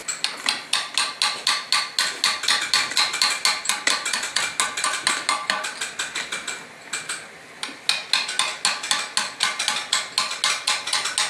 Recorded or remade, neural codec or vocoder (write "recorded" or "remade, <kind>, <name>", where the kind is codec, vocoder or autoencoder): recorded